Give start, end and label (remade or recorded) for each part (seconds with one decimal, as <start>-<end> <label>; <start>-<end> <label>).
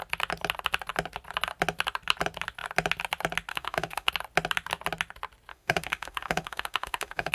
0.0-3.5 recorded; 3.5-4.1 remade; 4.1-5.5 recorded; 5.5-7.3 remade